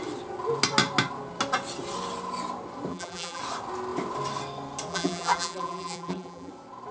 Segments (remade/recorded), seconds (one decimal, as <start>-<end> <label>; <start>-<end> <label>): 0.0-2.9 recorded; 2.9-3.4 remade; 3.4-4.9 recorded; 4.9-6.5 remade; 6.5-6.9 recorded